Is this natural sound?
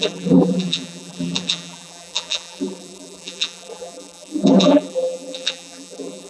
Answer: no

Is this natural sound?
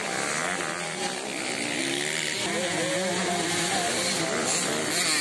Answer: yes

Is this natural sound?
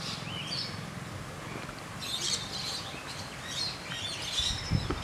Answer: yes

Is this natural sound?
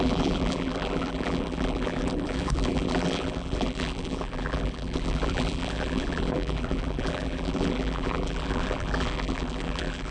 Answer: no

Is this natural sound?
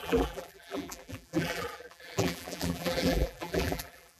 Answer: no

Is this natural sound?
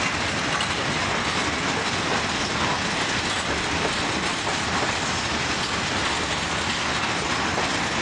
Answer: yes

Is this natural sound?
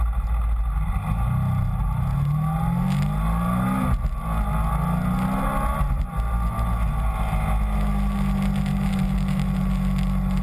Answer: yes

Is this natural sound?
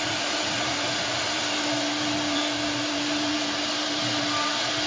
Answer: no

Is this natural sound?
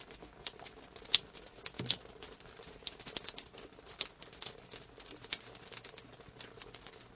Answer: yes